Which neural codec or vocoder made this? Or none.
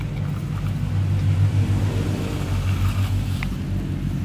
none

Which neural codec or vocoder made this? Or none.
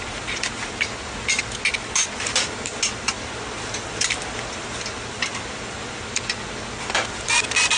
none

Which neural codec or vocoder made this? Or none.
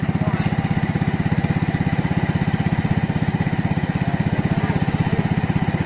none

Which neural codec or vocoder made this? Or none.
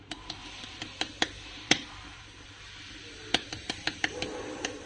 vocoder, BigVGAN v2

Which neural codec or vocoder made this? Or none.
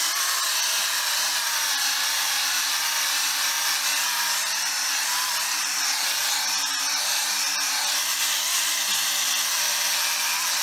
none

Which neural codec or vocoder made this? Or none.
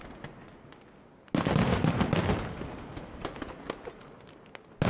none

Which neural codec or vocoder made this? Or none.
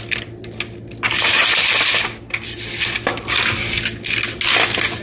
none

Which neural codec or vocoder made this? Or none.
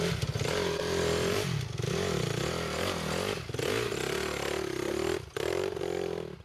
none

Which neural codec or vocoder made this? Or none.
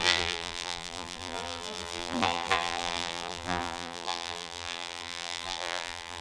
vocoder, BigVGAN v2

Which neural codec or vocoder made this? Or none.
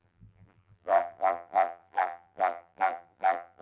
vocoder, BigVGAN v2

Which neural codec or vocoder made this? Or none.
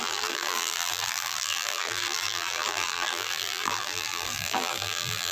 vocoder, BigVGAN v2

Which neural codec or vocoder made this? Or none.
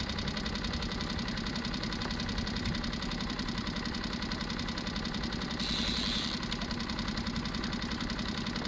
vocoder, BigVGAN v2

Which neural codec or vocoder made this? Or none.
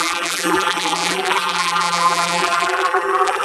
vocoder, BigVGAN v2